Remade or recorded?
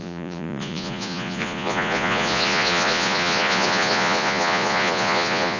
remade